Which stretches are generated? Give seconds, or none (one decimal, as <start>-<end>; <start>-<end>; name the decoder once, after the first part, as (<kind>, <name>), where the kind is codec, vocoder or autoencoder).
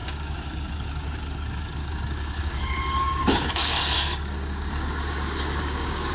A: 0.0-6.1 (codec, DAC)